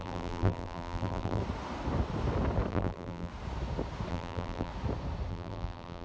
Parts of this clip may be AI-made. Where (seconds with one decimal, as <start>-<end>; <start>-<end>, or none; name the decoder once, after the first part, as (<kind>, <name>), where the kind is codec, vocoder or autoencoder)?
0.0-1.4 (vocoder, BigVGAN v2); 2.7-3.3; 4.1-4.7; 5.3-6.0

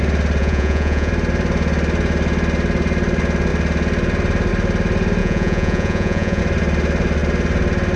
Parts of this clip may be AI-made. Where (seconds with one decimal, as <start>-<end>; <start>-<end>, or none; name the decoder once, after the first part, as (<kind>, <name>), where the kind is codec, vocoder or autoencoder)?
0.4-1.1 (vocoder, Vocos); 5.2-6.4

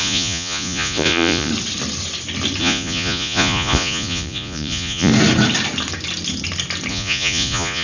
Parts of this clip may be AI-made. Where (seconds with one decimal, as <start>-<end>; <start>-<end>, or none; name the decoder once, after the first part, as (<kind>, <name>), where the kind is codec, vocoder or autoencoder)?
0.0-1.5 (vocoder, Vocos); 2.6-5.1; 6.9-7.8